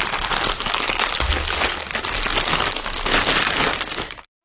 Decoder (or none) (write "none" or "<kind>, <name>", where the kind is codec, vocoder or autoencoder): none